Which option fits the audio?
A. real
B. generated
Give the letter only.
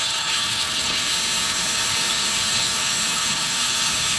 B